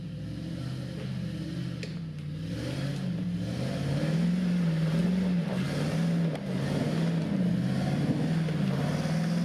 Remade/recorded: recorded